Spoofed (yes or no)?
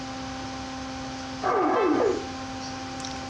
no